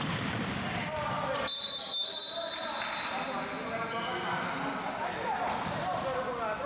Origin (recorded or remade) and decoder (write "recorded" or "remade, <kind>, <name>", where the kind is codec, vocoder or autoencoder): recorded